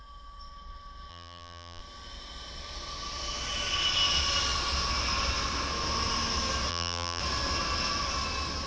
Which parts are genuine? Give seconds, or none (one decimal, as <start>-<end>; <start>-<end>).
0.0-1.1; 1.8-6.7; 7.2-8.7